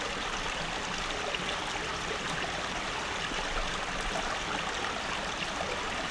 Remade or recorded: recorded